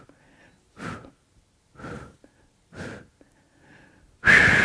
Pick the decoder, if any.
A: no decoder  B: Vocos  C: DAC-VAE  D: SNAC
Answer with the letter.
A